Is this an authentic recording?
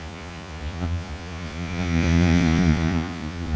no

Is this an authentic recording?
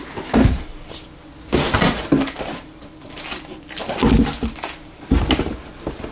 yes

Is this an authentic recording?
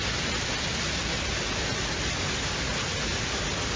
yes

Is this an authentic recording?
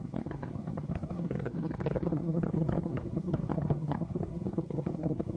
no